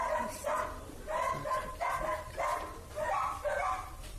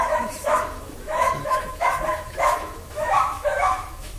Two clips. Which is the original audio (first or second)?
first